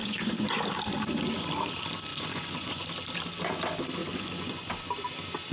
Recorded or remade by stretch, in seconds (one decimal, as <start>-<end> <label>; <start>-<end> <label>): 0.0-0.6 remade; 0.6-2.1 recorded; 2.1-2.9 remade; 2.9-4.0 recorded; 4.0-4.7 remade; 4.7-5.5 recorded

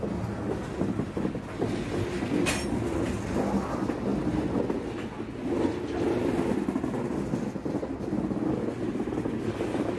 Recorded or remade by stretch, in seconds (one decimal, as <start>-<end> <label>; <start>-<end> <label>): 0.0-10.0 recorded

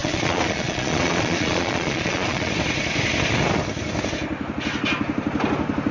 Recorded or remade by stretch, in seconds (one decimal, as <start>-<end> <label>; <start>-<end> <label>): 0.0-2.5 remade; 2.5-5.9 recorded

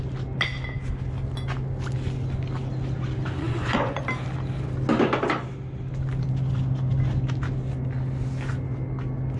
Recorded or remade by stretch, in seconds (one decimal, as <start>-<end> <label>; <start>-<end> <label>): 0.0-3.4 recorded; 3.4-4.0 remade; 4.0-9.4 recorded

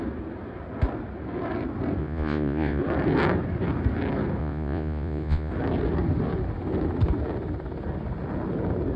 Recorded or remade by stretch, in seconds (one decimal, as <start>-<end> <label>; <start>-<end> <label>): 0.0-2.0 recorded; 2.0-2.8 remade; 2.8-4.4 recorded; 4.4-5.5 remade; 5.5-9.0 recorded

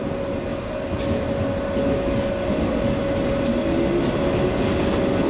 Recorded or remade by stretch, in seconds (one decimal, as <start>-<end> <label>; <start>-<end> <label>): 0.0-5.3 recorded

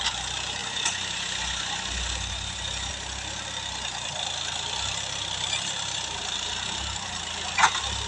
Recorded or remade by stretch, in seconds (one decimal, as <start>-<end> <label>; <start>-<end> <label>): 0.0-0.6 recorded; 0.6-2.9 remade; 2.9-8.1 recorded

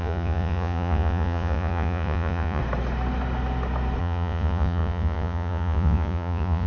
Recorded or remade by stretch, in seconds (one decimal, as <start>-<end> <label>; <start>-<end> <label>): 0.0-2.6 remade; 2.6-4.0 recorded; 4.0-6.7 remade